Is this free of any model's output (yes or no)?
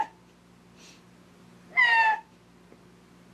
yes